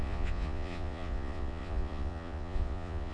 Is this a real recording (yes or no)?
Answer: no